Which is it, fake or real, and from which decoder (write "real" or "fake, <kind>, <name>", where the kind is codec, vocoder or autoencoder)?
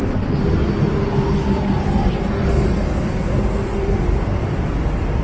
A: real